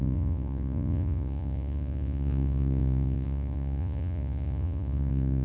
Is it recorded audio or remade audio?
remade